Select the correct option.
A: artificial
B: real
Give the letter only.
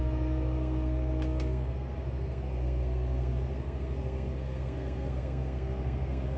A